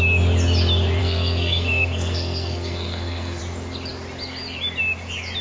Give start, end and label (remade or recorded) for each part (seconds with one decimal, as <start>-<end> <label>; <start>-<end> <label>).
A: 0.0-1.0 recorded; 1.0-3.4 remade; 3.4-5.4 recorded